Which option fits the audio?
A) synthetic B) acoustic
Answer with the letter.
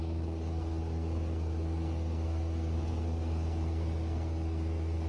A